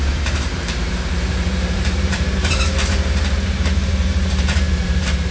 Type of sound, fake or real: fake